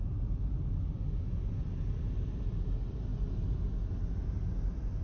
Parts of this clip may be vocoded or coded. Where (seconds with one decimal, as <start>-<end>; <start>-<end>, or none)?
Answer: none